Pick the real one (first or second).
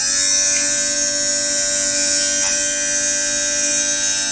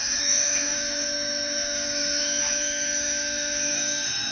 first